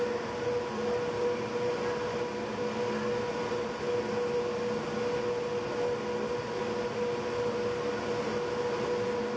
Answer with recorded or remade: recorded